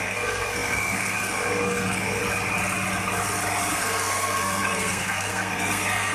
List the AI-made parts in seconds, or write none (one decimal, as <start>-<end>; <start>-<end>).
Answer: 0.0-2.2; 3.7-6.1

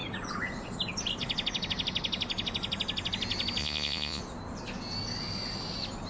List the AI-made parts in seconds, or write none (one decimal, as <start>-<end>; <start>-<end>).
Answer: 3.6-4.2

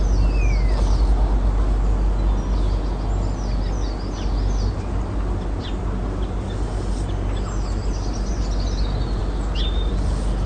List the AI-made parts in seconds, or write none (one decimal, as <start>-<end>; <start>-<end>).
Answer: none

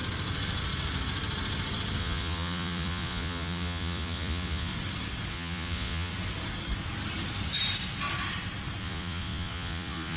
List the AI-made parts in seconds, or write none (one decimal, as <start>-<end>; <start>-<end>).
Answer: 2.0-4.7; 5.3-6.1; 8.8-10.2